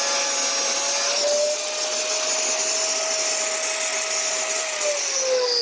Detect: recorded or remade recorded